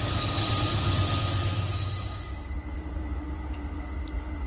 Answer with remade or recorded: recorded